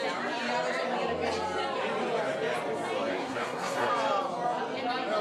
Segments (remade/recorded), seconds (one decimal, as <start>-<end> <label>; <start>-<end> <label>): 0.0-3.1 recorded; 3.1-3.9 remade; 3.9-5.2 recorded